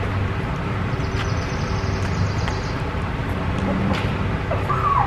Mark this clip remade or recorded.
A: remade